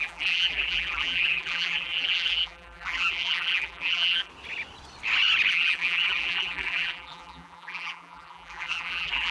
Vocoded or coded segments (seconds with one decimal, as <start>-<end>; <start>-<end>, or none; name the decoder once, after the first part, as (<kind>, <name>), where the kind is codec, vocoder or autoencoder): 0.0-4.3 (vocoder, BigVGAN v2); 5.5-9.3